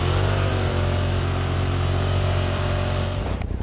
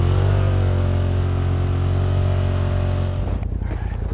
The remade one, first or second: first